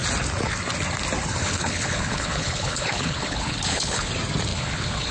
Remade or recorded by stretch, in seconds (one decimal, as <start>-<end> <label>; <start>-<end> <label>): 0.0-1.4 recorded; 1.4-4.1 remade; 4.1-4.5 recorded; 4.5-5.1 remade